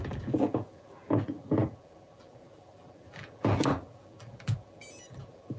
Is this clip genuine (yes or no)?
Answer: no